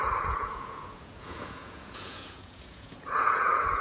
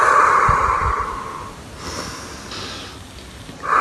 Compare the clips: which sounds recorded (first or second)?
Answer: second